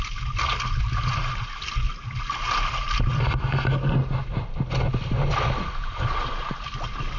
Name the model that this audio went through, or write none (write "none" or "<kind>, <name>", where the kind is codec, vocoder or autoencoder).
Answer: none